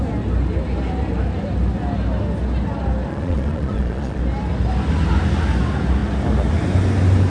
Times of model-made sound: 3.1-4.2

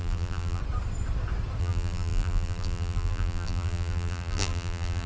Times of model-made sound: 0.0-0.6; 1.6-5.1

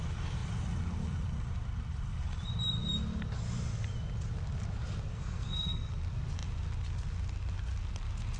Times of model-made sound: 5.1-5.9

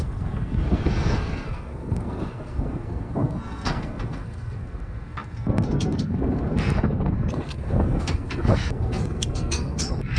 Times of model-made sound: 0.0-10.2

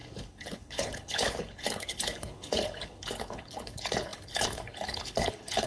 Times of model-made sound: 0.0-5.7

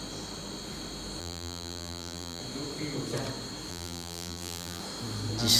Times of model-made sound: 1.2-2.4; 3.7-4.8

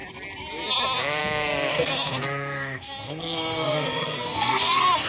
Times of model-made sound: 1.7-5.1

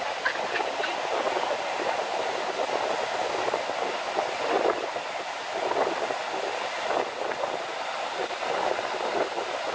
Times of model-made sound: none